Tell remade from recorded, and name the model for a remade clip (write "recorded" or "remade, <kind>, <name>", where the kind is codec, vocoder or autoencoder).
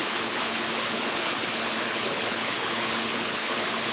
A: remade, codec, HILCodec